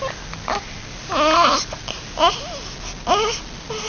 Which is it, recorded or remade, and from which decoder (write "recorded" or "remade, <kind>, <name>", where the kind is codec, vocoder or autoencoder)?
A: recorded